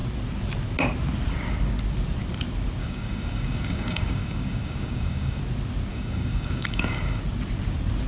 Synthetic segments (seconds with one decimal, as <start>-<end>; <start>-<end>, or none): 2.8-5.4; 5.9-7.2